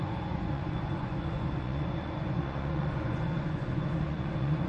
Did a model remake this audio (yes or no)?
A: yes